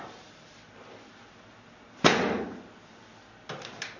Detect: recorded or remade recorded